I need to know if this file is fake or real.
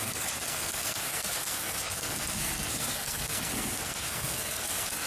fake